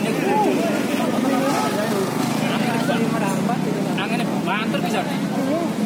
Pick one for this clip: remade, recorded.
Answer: recorded